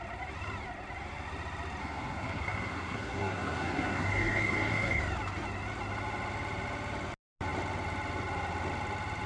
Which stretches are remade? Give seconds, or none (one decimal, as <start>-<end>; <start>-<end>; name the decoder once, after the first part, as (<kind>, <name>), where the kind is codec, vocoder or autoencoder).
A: 1.8-5.0 (codec, SNAC)